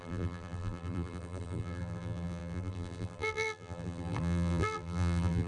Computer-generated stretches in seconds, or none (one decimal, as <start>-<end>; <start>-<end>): 0.0-5.5